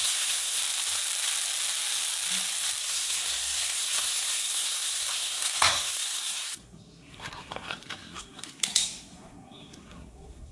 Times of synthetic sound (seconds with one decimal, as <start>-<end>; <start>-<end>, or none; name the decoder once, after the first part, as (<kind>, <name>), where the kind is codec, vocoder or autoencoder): 0.0-0.6 (codec, SNAC); 2.8-10.5